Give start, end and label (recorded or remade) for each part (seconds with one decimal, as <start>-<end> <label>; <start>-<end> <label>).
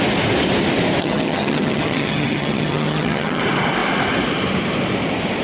0.0-1.0 recorded; 1.0-3.4 remade; 3.4-5.4 recorded